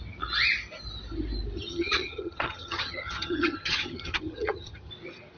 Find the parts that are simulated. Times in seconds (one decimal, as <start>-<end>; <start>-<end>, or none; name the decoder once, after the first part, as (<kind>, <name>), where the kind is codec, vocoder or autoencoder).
1.7-4.9 (vocoder, HiFi-GAN)